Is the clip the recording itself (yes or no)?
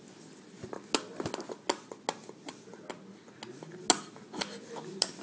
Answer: yes